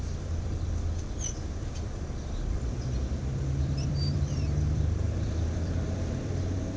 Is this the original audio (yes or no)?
no